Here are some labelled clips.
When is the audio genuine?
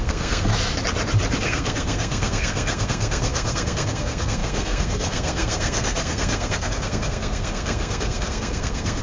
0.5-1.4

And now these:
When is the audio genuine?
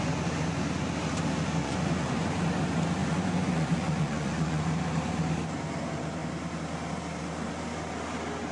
0.0-1.6; 2.3-3.0; 4.6-8.5